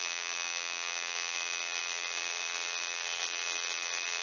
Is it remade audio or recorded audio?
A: remade